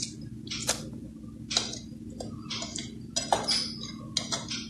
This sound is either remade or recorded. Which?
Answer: recorded